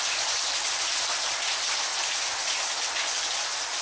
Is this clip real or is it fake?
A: real